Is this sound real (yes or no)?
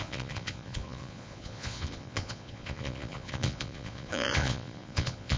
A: no